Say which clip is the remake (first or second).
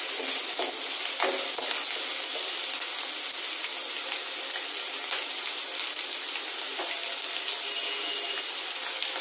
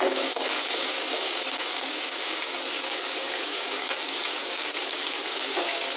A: second